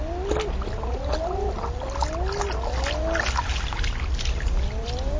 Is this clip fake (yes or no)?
no